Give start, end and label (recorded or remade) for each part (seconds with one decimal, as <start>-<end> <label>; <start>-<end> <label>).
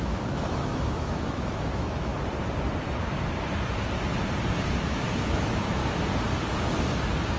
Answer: 0.0-2.1 remade; 2.1-4.7 recorded; 4.7-5.8 remade; 5.8-7.4 recorded